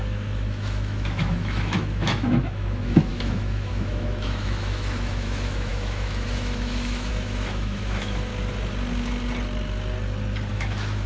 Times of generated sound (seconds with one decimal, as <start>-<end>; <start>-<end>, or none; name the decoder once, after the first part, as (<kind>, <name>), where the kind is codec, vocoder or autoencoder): 0.0-8.3 (autoencoder, DAC-VAE); 10.5-11.1